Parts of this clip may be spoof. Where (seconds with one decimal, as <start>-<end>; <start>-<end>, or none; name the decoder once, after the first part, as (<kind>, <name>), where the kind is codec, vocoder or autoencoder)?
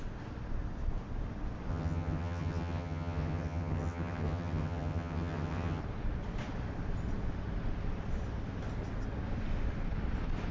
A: 1.7-5.8 (vocoder, HiFi-GAN)